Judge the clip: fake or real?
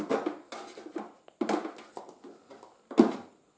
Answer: real